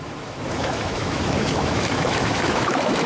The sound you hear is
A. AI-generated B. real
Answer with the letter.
A